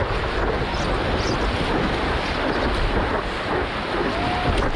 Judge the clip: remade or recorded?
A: recorded